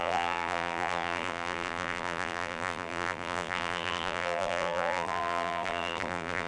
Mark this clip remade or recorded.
remade